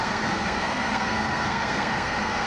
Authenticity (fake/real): fake